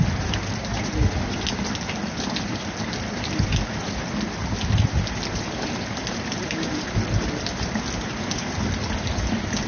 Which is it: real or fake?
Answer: real